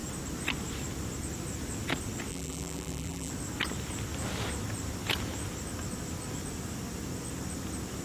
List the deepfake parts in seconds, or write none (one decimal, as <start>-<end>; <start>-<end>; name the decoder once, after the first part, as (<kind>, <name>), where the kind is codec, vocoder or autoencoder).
2.3-3.3 (vocoder, BigVGAN v2)